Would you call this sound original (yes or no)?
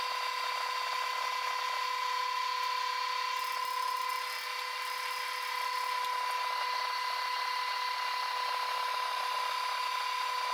yes